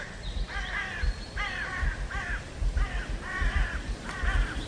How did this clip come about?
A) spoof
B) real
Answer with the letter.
B